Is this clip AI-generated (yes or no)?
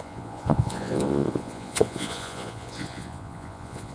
yes